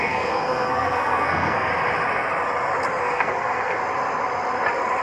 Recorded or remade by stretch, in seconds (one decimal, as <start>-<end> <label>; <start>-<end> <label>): 0.0-1.7 remade; 1.7-3.0 recorded; 3.0-3.8 remade; 3.8-5.0 recorded